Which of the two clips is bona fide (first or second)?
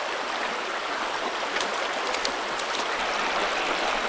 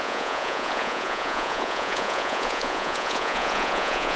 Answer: first